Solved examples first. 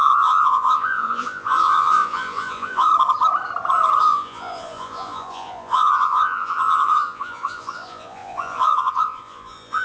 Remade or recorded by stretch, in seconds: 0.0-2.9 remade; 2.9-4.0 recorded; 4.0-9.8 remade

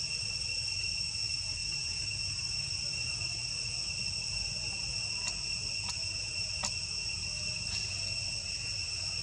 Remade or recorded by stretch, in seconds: 0.0-1.6 recorded; 1.6-2.8 remade; 2.8-9.2 recorded

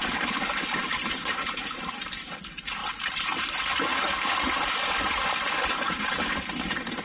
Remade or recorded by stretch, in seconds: 0.0-7.0 recorded

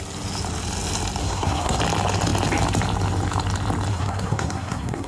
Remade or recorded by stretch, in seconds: 0.0-1.2 recorded; 1.2-1.8 remade; 1.8-3.9 recorded; 3.9-5.1 remade